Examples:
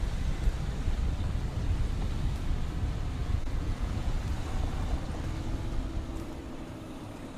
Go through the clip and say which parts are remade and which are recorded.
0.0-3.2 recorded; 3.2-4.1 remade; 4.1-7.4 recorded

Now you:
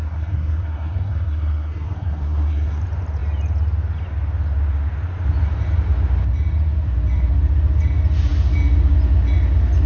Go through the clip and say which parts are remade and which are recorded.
0.0-2.8 remade; 2.8-9.9 recorded

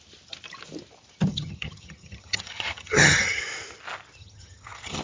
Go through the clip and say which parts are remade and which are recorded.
0.0-1.3 recorded; 1.3-3.4 remade; 3.4-4.2 recorded; 4.2-5.0 remade

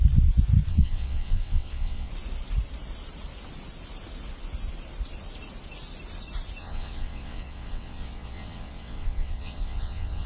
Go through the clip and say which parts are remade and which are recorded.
0.0-0.7 recorded; 0.7-2.1 remade; 2.1-6.6 recorded; 6.6-10.3 remade